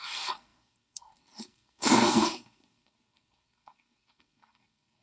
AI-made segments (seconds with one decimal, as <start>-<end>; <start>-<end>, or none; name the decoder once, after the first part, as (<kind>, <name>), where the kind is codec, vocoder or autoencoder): 0.0-5.0 (codec, SNAC)